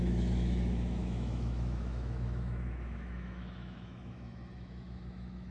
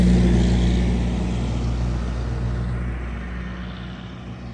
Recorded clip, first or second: second